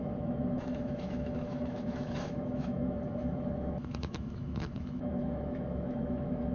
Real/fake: fake